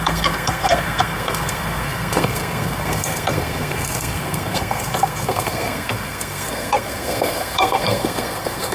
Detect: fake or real fake